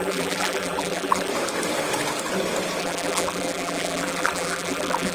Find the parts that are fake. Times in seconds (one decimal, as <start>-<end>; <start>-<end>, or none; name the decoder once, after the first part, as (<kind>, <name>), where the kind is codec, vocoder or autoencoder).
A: 0.0-1.3 (vocoder, BigVGAN v2); 2.8-5.1